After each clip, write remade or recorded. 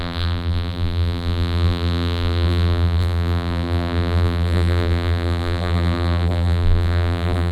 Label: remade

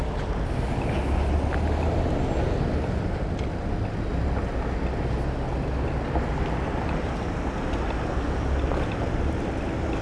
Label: recorded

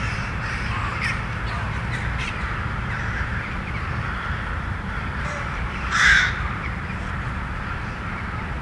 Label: remade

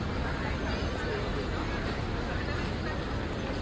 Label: recorded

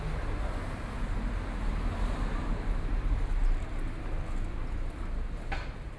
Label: recorded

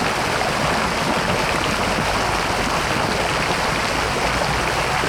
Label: recorded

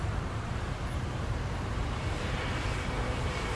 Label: remade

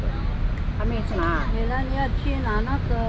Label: recorded